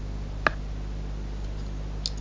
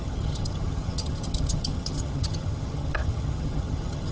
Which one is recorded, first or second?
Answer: first